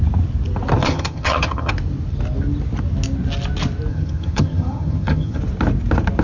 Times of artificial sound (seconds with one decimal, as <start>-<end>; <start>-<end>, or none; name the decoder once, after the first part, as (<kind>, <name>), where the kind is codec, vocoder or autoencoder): 0.8-1.7 (vocoder, HiFi-GAN); 3.9-5.4